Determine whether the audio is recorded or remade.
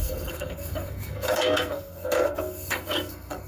remade